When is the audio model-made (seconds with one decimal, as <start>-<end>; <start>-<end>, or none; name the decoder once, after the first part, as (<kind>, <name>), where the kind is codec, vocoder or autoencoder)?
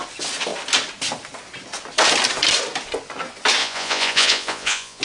3.6-5.0 (vocoder, Vocos)